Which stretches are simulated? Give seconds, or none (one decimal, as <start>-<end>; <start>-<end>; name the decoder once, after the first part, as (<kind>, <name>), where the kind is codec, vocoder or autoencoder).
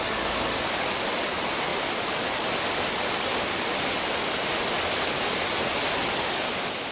none